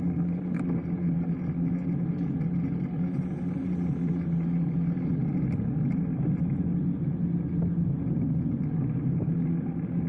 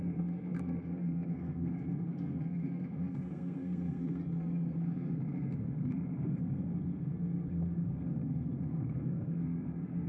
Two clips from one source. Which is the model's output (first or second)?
second